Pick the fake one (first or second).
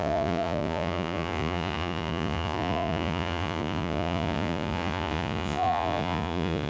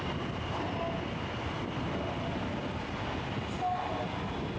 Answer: first